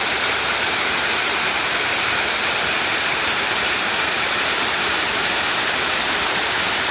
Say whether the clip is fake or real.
fake